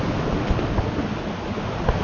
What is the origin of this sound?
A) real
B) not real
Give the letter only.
A